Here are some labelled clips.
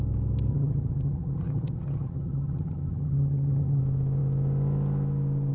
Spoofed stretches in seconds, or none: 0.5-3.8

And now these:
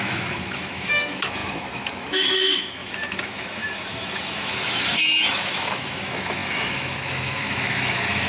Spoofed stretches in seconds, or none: 0.0-8.3

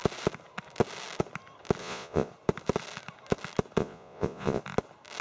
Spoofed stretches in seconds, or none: 1.8-2.3; 3.8-4.6